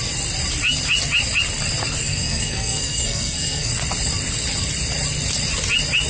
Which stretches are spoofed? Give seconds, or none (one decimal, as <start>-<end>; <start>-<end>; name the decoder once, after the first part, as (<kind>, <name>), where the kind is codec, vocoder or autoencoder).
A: 2.0-3.7 (codec, SNAC)

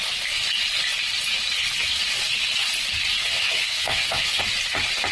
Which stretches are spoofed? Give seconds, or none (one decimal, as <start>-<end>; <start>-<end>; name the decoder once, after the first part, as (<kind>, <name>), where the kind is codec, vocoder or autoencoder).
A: 3.2-4.4 (vocoder, WaveNeXt)